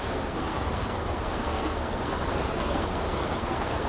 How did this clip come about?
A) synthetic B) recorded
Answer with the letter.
A